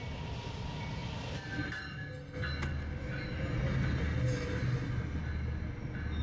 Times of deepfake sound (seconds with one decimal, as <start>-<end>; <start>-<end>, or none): none